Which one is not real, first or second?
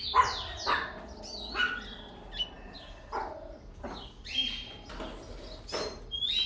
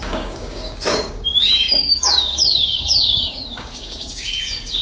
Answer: second